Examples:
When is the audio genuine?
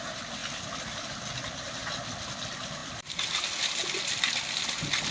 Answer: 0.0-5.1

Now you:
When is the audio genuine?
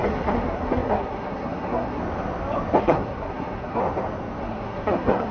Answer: 2.0-2.8; 3.8-4.4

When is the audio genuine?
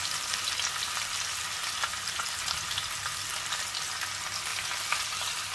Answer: 0.0-5.5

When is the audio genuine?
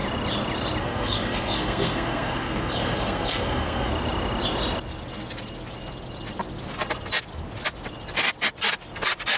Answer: 0.0-0.8; 3.9-9.4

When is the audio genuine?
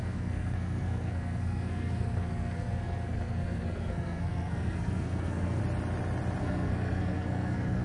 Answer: 5.6-6.4